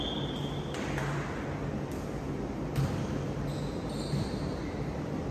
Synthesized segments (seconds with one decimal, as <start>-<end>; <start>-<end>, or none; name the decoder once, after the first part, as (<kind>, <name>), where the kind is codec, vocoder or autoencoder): none